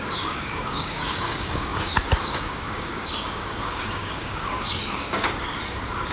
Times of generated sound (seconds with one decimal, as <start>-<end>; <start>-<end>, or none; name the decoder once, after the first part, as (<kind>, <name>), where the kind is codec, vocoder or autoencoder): 0.0-6.1 (codec, DAC)